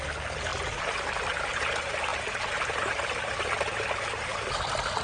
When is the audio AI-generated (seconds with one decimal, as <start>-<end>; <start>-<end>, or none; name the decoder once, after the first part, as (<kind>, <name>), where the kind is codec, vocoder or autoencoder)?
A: none